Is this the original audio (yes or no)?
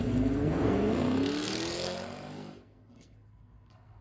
no